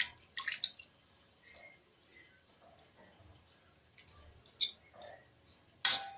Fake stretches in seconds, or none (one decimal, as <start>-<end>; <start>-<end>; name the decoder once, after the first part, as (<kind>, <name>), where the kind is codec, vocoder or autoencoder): none